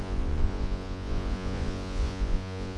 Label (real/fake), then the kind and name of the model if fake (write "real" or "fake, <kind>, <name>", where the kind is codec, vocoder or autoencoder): fake, vocoder, Vocos